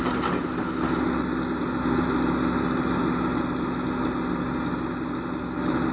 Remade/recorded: recorded